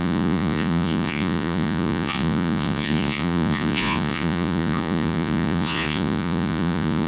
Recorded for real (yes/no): no